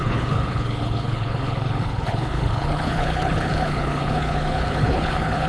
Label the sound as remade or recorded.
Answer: remade